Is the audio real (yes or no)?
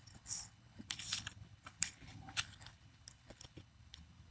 no